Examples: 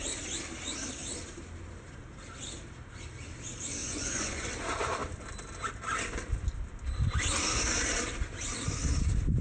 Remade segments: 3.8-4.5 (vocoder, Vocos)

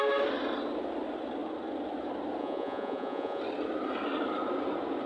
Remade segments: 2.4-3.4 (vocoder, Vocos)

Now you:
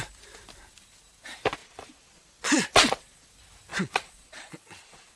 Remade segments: 1.6-3.3 (vocoder, Vocos); 3.7-5.2

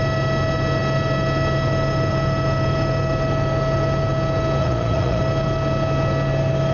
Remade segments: 4.6-5.2 (vocoder, Vocos)

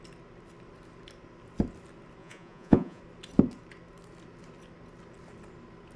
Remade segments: 2.2-3.0 (vocoder, Vocos)

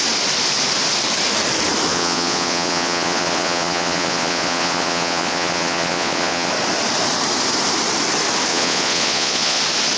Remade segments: 1.9-6.5 (vocoder, Vocos); 8.5-9.6

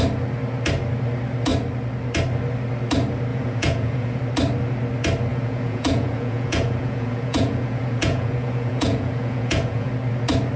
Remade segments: 3.3-4.2 (vocoder, Vocos); 5.3-9.9